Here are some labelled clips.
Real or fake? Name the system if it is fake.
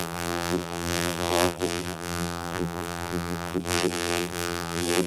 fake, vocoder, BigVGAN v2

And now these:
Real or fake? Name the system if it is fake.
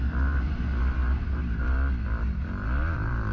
real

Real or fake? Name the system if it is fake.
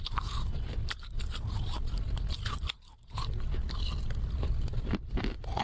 real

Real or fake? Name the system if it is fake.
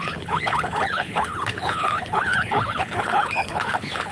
fake, codec, HILCodec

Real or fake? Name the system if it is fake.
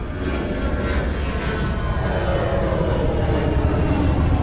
real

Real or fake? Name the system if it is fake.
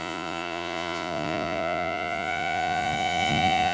fake, vocoder, Vocos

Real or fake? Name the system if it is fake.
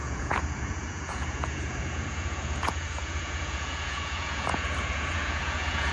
fake, vocoder, Vocos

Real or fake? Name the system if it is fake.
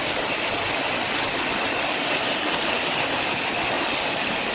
real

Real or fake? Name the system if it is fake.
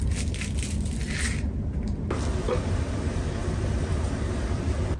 real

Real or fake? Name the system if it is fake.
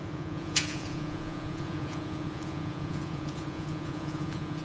fake, vocoder, Vocos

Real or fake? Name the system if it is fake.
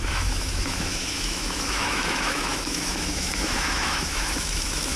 fake, autoencoder, DAC-VAE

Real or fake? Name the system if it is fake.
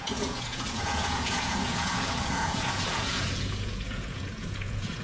fake, vocoder, Vocos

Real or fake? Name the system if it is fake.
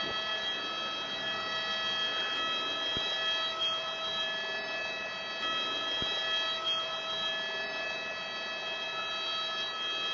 real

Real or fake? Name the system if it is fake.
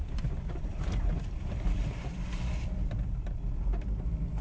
fake, vocoder, BigVGAN v2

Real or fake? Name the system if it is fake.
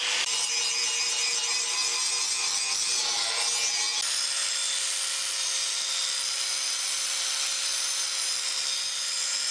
real